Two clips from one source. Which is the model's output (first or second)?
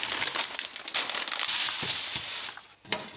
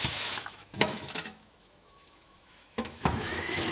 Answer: second